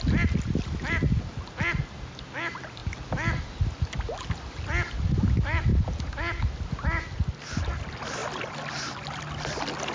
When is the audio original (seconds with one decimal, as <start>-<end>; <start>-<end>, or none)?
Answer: 0.0-9.9